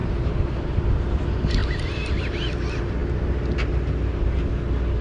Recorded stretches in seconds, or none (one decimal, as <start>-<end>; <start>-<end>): 0.0-5.0